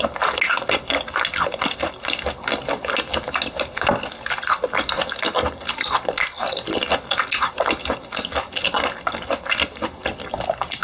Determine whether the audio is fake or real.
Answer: real